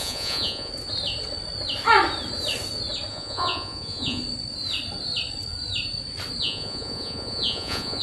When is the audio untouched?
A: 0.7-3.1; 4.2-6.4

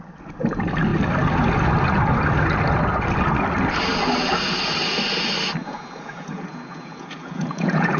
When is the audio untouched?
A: 0.0-5.6

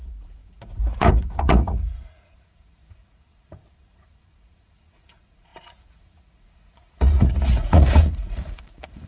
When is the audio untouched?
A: none

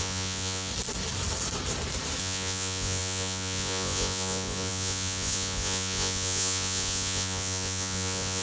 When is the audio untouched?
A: 0.7-2.2